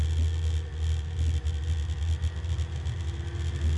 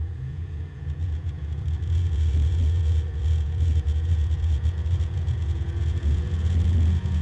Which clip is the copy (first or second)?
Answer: second